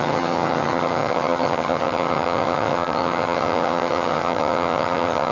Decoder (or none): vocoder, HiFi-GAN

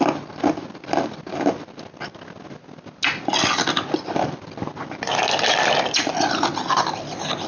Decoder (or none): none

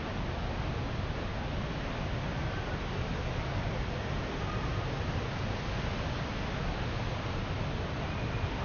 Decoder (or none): none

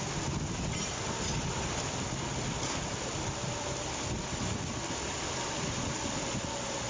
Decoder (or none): none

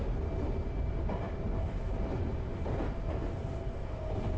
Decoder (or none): none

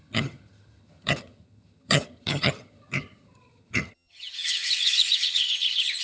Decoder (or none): vocoder, HiFi-GAN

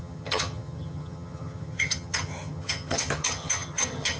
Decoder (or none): vocoder, HiFi-GAN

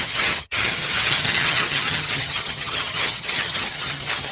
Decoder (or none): vocoder, HiFi-GAN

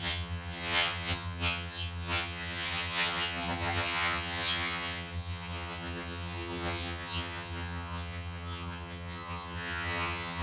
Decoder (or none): vocoder, HiFi-GAN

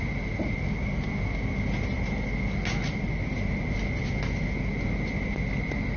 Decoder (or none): none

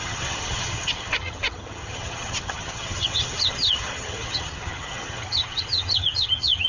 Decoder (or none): vocoder, HiFi-GAN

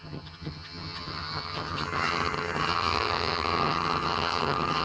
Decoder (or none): vocoder, HiFi-GAN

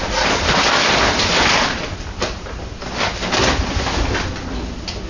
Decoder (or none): none